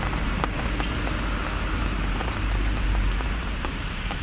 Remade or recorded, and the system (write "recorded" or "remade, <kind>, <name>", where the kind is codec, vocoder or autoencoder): remade, vocoder, BigVGAN v2